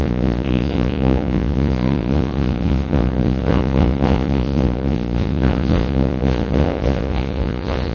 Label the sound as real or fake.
fake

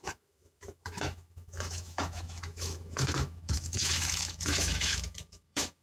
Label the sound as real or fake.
fake